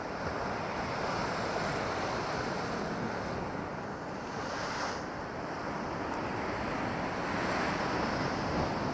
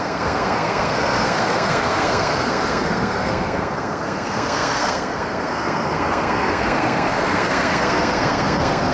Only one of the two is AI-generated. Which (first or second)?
second